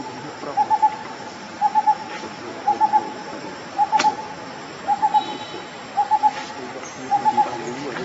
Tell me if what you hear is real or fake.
real